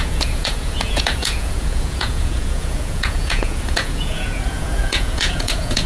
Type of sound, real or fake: fake